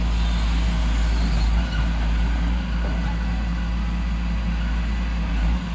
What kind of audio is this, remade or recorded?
recorded